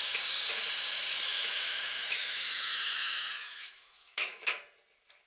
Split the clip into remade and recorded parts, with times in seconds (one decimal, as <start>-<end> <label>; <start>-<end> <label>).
0.0-1.3 recorded; 1.3-4.5 remade; 4.5-5.3 recorded